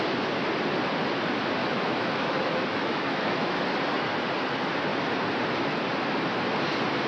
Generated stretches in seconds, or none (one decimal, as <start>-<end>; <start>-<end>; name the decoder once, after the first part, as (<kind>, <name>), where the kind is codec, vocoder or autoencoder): 1.6-3.6 (autoencoder, DAC-VAE)